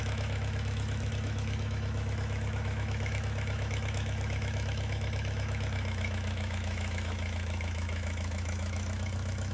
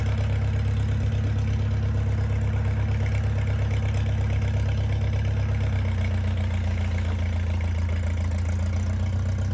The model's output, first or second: first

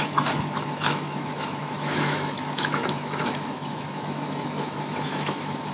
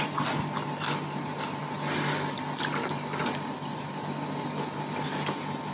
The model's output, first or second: first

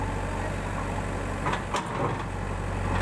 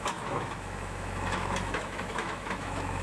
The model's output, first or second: second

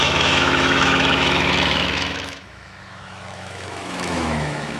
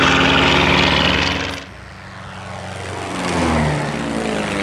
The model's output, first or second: first